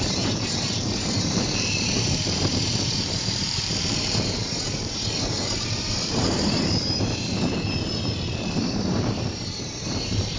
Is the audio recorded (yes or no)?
no